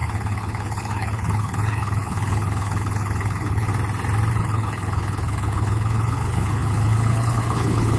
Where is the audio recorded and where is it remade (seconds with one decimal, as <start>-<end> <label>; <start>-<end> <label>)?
0.0-3.7 remade; 3.7-4.3 recorded; 4.3-8.0 remade